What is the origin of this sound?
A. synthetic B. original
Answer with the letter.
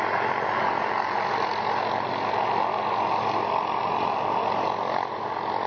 B